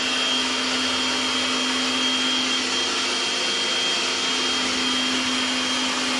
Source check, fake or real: real